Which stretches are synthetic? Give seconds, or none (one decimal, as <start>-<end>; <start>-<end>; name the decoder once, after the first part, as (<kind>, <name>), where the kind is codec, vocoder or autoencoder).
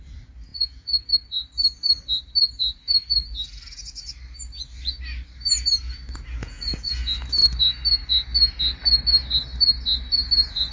0.5-1.1 (vocoder, Vocos); 6.4-6.9